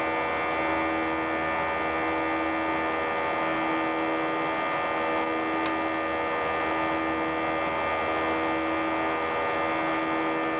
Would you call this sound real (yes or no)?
yes